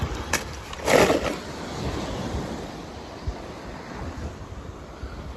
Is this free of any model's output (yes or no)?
no